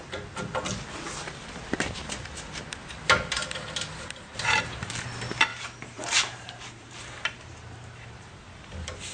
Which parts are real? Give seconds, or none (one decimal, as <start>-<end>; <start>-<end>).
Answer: 0.0-4.3; 4.9-5.5; 8.3-9.1